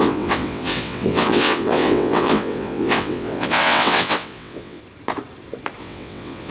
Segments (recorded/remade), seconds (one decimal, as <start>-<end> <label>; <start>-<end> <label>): 0.0-4.8 remade; 4.8-5.8 recorded; 5.8-6.5 remade